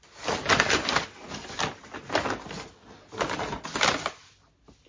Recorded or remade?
recorded